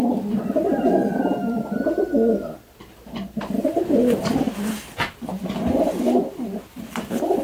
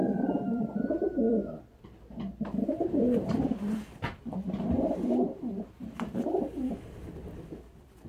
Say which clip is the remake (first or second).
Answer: second